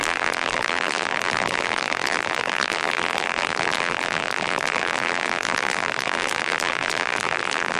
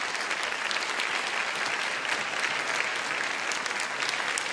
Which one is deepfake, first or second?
first